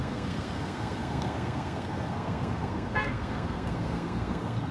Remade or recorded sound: remade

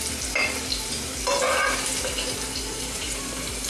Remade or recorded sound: recorded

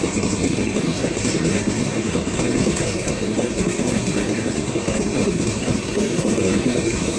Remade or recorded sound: remade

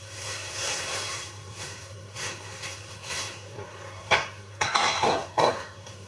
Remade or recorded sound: remade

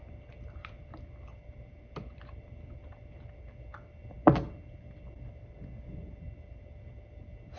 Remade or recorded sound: recorded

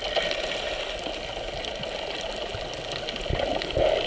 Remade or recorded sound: recorded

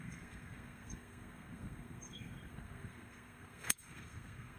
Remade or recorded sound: remade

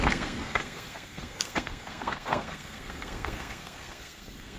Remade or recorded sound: remade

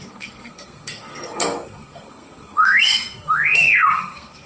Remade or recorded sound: remade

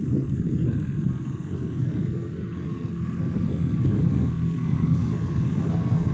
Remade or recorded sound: remade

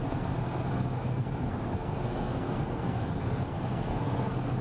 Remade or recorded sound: remade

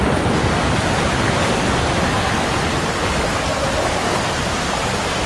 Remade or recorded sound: recorded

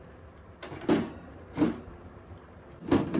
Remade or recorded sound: recorded